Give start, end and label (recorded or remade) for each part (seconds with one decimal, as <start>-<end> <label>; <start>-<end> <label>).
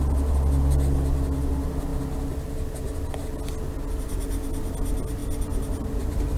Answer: 0.0-6.4 recorded